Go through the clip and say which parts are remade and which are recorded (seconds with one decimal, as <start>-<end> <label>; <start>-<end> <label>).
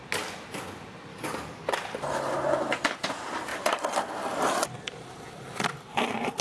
0.0-1.1 recorded; 1.1-1.8 remade; 1.8-6.4 recorded